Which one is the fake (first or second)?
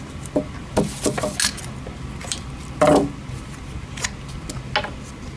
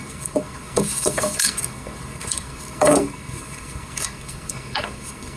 second